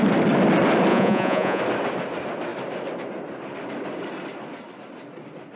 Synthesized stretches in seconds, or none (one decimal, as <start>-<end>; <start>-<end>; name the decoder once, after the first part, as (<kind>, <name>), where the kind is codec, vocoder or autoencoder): 0.9-1.6 (vocoder, Vocos)